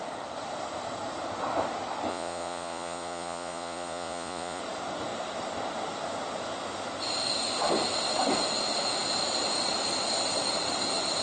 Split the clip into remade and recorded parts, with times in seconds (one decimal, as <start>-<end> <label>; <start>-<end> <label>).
0.0-2.1 recorded; 2.1-4.6 remade; 4.6-11.2 recorded